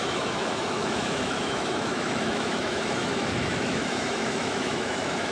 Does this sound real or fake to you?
fake